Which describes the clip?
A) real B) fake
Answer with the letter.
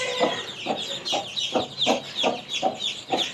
A